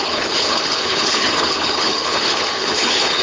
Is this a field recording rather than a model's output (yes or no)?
no